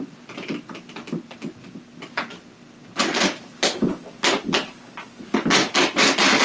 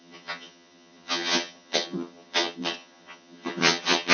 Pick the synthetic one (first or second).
second